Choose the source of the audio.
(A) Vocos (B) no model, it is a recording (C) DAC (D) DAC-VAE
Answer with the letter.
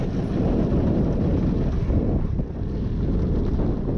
B